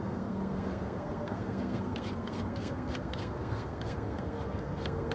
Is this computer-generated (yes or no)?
yes